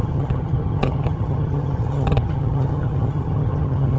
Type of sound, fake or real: fake